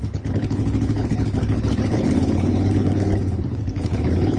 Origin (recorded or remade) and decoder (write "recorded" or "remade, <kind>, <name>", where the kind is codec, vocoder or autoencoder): remade, codec, HILCodec